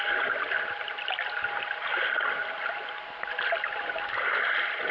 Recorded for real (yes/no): yes